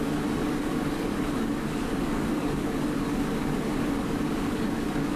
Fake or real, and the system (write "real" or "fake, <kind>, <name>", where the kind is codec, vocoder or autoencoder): fake, codec, DAC